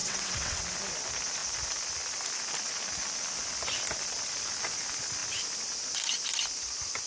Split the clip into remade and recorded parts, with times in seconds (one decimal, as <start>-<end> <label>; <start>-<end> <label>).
0.0-0.6 remade; 0.6-7.1 recorded